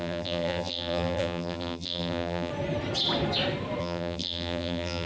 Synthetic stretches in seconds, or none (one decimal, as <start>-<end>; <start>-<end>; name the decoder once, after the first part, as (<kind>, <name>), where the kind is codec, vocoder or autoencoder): 0.0-2.5 (vocoder, BigVGAN v2); 3.8-5.1